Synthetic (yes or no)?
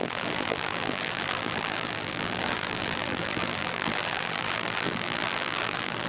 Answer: yes